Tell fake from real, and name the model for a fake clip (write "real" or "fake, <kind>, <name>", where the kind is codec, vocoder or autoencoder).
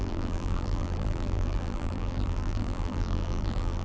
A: fake, vocoder, BigVGAN v2